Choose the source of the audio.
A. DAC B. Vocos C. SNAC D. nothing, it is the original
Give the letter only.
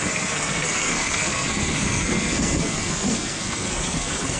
C